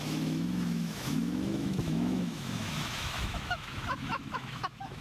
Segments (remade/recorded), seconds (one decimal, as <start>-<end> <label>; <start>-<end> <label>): 0.0-5.0 remade